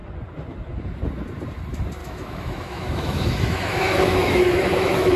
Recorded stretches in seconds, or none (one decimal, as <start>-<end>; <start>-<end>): 0.0-2.0